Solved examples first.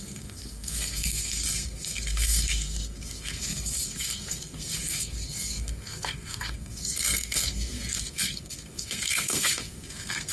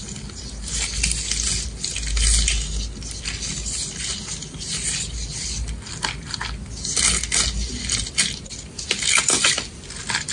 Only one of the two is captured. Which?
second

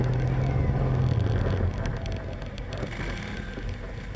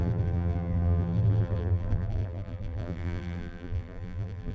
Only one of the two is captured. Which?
first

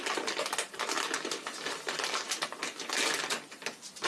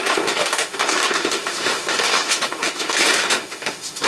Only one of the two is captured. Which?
first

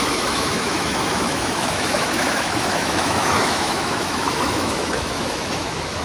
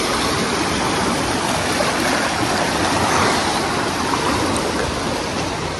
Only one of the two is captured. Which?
second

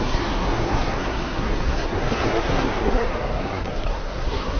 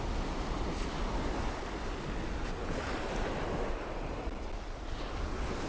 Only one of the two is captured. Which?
second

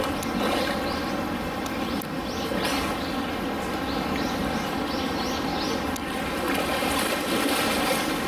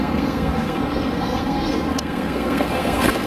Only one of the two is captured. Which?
first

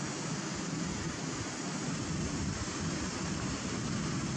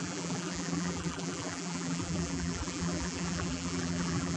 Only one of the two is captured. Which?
first